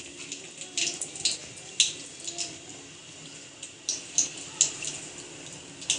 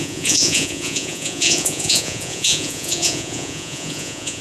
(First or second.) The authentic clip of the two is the first